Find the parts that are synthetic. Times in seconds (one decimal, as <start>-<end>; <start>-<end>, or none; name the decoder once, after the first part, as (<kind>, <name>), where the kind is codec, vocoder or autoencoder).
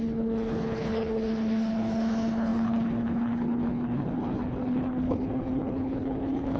0.0-6.6 (codec, HILCodec)